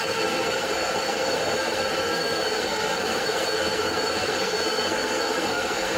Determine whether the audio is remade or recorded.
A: remade